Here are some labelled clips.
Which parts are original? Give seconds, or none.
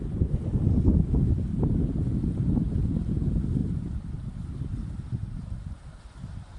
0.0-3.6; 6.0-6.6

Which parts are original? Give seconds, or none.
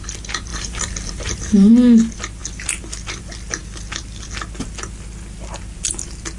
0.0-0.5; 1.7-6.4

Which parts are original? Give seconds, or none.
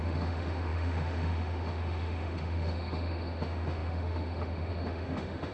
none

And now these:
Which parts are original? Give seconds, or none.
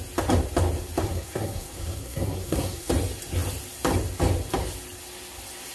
0.0-1.0; 2.9-5.7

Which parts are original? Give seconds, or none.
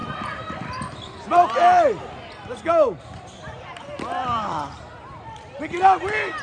2.0-3.9; 5.6-6.4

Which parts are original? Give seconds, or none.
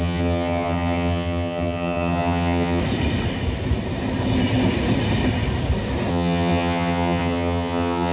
2.8-6.1